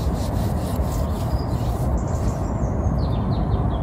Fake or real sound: real